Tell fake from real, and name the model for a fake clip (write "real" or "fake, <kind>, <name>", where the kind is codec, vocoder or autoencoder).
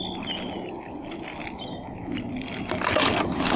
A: real